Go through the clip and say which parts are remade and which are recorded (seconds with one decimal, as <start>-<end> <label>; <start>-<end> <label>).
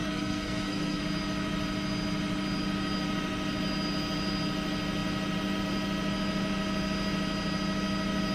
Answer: 0.0-1.0 remade; 1.0-8.3 recorded